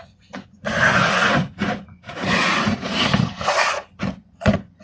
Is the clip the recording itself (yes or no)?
no